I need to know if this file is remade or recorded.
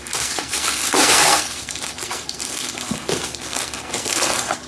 remade